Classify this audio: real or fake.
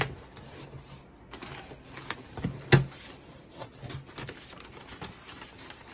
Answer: real